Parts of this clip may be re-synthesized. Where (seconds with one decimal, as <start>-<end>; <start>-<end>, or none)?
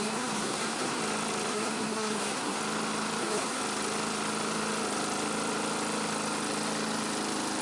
0.0-1.0; 1.5-2.6; 3.2-3.6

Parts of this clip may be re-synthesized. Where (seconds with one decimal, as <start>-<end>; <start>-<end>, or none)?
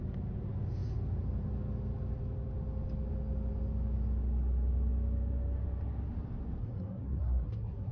6.6-7.9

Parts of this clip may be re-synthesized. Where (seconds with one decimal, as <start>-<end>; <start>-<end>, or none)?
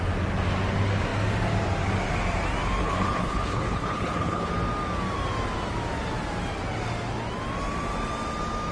2.8-4.5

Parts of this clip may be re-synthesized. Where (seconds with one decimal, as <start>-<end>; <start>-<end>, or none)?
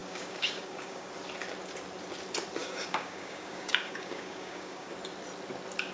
0.0-1.1; 2.6-4.9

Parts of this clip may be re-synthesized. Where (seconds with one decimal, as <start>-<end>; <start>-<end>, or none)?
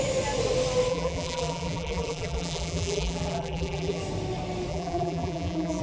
0.9-4.0; 4.7-5.8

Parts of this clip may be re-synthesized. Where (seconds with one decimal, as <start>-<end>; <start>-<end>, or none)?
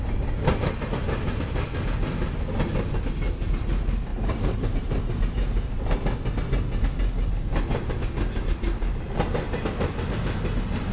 4.1-5.7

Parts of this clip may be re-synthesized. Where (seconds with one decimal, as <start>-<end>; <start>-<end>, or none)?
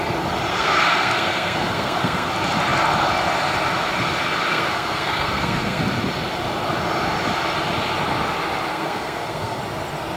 0.5-2.3; 4.5-5.8; 8.7-9.6